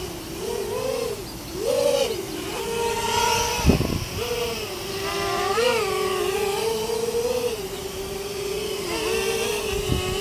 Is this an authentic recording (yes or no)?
yes